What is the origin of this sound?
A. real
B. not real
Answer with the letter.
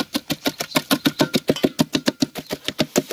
A